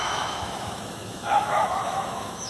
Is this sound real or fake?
fake